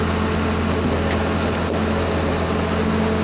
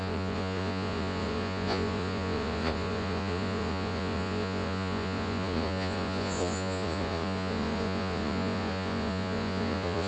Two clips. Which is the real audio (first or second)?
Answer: first